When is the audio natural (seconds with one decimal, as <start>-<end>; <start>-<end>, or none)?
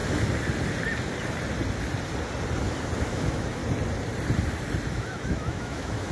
0.0-3.0; 3.6-4.9